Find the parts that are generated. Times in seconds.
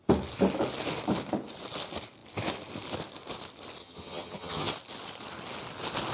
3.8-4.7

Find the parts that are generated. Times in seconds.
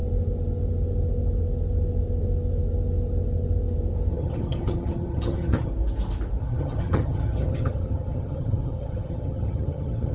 4.1-5.7; 6.4-10.1